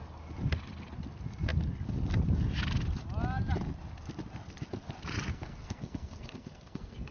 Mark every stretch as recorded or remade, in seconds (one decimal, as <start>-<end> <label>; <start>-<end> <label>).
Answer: 0.0-5.3 recorded; 5.3-7.1 remade

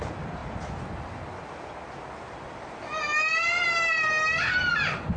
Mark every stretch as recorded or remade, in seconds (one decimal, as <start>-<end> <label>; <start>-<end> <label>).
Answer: 0.0-5.2 recorded

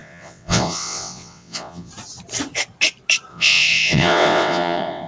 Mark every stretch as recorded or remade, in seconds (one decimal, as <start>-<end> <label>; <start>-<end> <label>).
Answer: 0.0-1.9 remade; 1.9-3.3 recorded; 3.3-5.1 remade

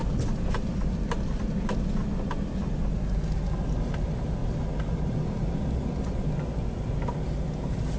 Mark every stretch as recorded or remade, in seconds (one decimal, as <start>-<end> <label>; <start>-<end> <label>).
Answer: 0.0-8.0 recorded

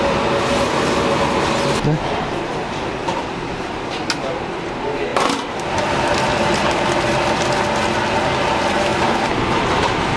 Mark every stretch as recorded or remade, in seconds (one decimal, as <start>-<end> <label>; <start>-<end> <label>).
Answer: 0.0-3.0 recorded; 3.0-3.8 remade; 3.8-5.1 recorded; 5.1-7.3 remade; 7.3-8.9 recorded; 8.9-10.2 remade

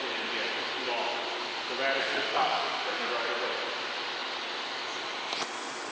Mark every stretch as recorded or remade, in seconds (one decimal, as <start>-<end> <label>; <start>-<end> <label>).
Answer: 0.0-2.0 recorded; 2.0-3.1 remade; 3.1-5.9 recorded